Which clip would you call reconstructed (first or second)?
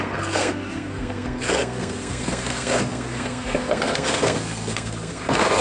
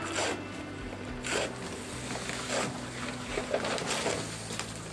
first